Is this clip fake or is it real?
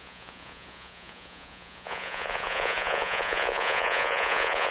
fake